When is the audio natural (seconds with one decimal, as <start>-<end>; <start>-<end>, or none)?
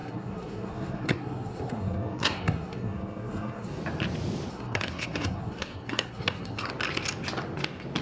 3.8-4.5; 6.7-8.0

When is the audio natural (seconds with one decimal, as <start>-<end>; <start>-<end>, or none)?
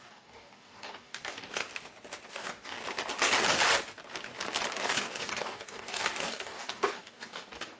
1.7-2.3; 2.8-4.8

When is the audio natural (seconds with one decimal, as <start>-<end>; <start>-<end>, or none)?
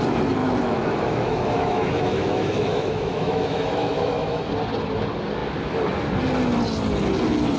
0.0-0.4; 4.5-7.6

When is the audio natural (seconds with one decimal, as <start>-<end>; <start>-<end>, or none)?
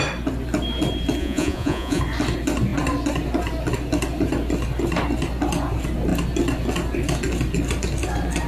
0.0-1.2; 2.0-8.5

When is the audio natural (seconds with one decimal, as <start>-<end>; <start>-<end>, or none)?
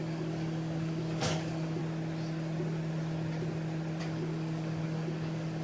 1.8-4.0